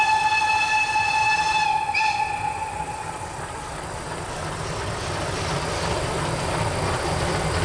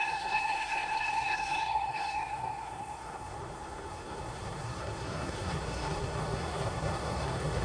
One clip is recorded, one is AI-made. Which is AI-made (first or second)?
second